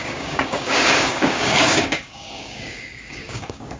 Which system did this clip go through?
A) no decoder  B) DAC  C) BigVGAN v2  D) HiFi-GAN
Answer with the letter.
B